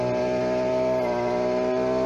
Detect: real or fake real